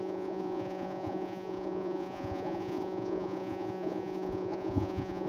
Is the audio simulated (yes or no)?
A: yes